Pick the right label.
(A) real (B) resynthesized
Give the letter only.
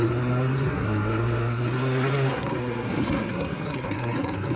B